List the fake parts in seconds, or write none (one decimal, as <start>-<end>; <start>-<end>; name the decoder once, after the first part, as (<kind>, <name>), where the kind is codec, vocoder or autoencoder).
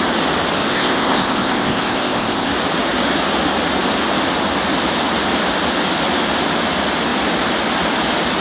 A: 0.7-2.5 (codec, ZipCodec)